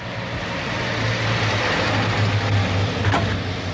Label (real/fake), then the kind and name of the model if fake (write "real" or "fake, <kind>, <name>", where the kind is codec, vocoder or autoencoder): real